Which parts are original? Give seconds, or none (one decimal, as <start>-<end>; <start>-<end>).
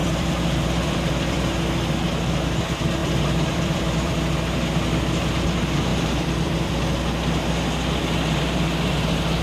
1.4-3.0; 4.1-5.9; 6.7-9.4